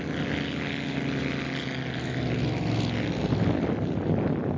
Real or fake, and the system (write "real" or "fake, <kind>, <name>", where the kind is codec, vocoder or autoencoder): real